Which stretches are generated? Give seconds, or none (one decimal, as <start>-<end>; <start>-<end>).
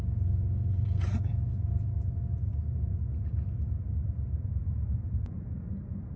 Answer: 1.3-1.9; 4.6-5.7